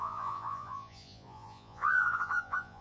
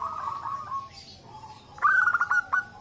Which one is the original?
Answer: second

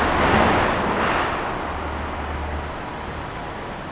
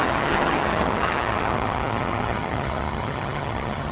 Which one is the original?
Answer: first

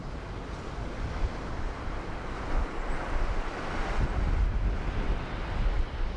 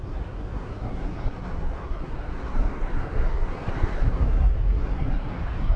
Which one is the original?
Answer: first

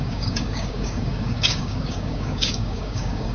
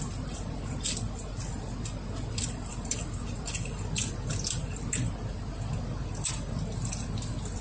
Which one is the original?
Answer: second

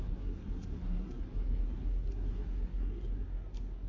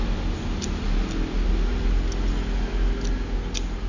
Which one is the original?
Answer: second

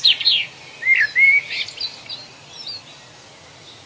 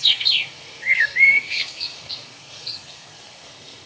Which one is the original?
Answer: first